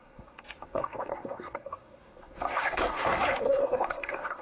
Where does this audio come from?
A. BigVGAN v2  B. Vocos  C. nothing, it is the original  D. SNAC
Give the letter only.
D